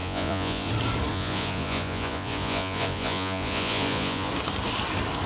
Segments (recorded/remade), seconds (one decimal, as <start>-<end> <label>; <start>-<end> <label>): 0.0-0.7 remade; 0.7-1.1 recorded; 1.1-4.3 remade; 4.3-5.3 recorded